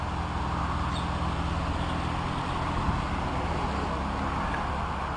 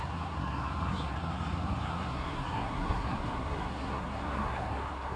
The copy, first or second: second